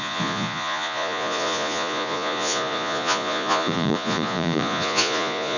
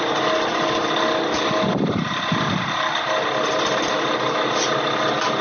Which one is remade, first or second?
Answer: first